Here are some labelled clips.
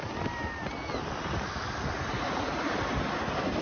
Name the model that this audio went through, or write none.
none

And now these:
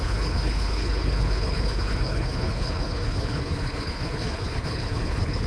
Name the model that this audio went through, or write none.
codec, HILCodec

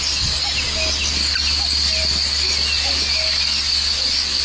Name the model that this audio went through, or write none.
none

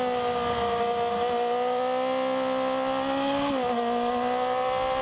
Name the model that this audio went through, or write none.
none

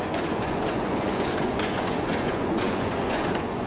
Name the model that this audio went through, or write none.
vocoder, Vocos